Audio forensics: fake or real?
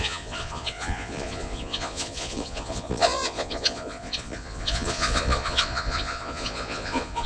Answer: fake